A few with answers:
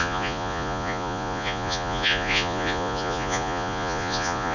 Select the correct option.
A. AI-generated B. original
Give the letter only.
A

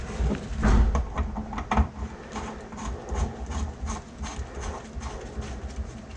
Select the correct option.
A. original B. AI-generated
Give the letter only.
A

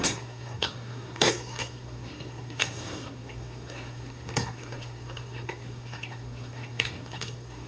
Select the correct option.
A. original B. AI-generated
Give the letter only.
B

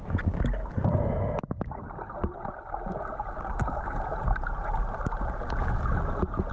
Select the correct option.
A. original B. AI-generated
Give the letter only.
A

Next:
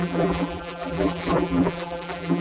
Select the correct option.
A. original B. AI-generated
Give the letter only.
B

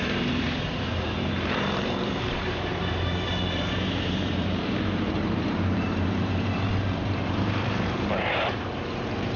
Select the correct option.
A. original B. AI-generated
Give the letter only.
B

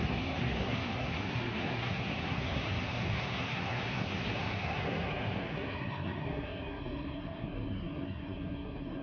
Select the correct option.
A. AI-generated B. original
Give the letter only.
A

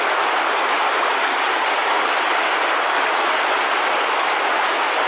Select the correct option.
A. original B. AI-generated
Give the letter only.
A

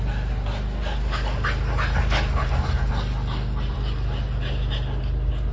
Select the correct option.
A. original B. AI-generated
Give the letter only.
A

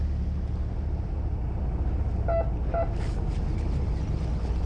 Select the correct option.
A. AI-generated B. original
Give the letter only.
B